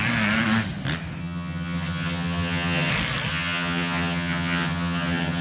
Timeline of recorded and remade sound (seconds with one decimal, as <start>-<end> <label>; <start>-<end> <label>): 0.0-1.2 recorded; 1.2-2.9 remade; 2.9-3.3 recorded; 3.3-5.4 remade